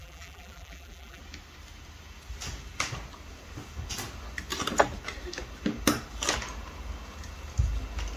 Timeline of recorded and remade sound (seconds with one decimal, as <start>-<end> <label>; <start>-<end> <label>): 0.0-1.2 remade; 1.2-8.2 recorded